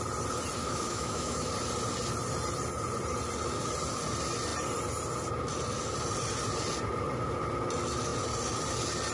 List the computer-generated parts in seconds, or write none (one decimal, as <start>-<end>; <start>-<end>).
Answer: 0.6-1.5